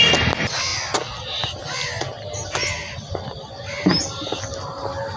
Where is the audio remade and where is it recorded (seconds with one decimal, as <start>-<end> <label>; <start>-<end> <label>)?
0.0-5.2 recorded

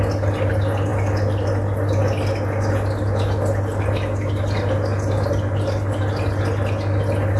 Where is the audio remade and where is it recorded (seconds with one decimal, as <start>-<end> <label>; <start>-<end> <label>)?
0.0-7.4 recorded

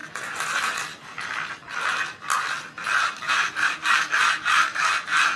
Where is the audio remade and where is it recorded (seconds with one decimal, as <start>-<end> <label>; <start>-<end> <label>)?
0.0-5.4 recorded

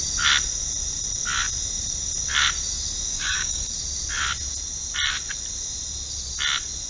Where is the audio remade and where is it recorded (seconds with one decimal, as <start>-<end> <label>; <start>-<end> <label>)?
0.0-3.1 recorded; 3.1-3.7 remade; 3.7-6.9 recorded

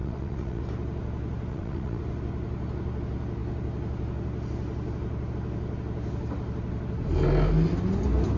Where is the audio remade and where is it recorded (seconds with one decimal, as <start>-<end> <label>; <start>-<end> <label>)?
0.0-0.6 remade; 0.6-1.5 recorded; 1.5-2.0 remade; 2.0-8.4 recorded

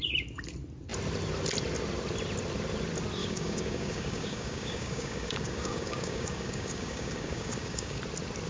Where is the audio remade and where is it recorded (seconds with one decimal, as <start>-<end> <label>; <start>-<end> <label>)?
0.0-3.2 recorded; 3.2-8.0 remade; 8.0-8.5 recorded

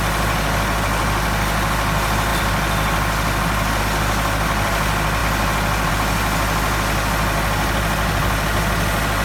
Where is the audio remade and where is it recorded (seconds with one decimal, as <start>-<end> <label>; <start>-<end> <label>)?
0.0-9.2 recorded